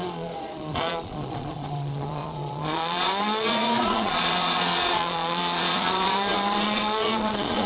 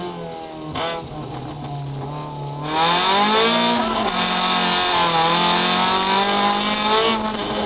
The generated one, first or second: first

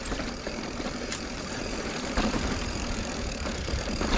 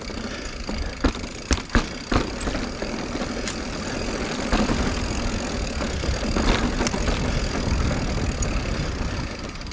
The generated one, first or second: first